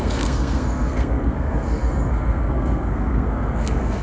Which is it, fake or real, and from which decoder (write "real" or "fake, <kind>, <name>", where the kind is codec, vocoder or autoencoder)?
fake, codec, SNAC